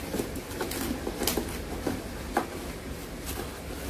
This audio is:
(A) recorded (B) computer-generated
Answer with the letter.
A